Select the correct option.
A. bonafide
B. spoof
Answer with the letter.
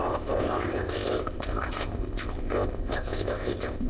B